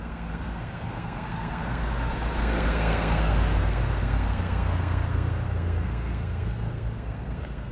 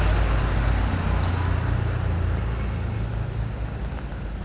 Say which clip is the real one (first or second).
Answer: second